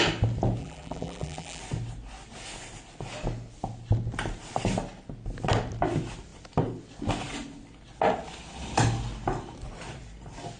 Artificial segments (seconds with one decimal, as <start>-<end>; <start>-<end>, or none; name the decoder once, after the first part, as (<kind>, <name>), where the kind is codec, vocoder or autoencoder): 0.6-1.6 (vocoder, BigVGAN v2)

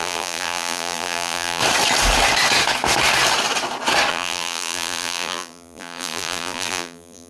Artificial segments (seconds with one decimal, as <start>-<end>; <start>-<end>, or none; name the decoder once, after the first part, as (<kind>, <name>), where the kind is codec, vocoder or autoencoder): 0.0-1.6 (vocoder, BigVGAN v2); 4.1-7.3

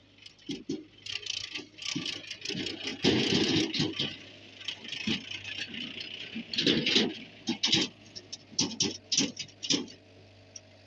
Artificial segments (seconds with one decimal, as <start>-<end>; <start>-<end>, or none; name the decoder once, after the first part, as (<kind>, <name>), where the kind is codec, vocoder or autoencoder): none

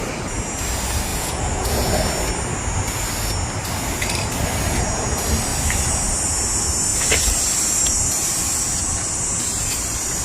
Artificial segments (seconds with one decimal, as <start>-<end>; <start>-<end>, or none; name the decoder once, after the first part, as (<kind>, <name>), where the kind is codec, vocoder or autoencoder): 1.1-1.9 (vocoder, Vocos)

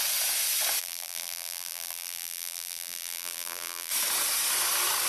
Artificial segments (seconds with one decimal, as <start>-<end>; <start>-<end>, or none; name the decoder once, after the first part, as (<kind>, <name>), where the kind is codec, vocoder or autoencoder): 0.8-3.9 (vocoder, BigVGAN v2)

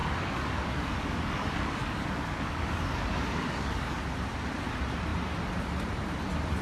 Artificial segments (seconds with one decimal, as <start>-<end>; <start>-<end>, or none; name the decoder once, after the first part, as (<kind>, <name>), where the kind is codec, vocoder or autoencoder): 0.0-4.0 (codec, DAC)

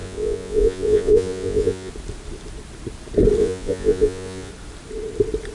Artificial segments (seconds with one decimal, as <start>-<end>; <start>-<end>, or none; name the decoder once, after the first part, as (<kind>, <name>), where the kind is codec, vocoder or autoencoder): 0.0-1.9 (vocoder, Vocos); 3.4-4.5

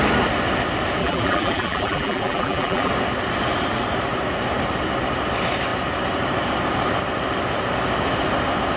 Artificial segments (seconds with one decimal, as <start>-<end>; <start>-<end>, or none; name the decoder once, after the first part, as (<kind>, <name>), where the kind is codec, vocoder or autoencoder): 1.0-2.9 (vocoder, BigVGAN v2)